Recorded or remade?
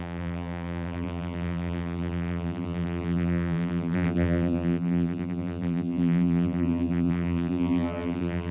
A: remade